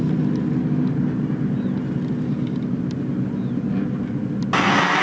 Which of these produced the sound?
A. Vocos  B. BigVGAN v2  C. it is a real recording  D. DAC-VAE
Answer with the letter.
C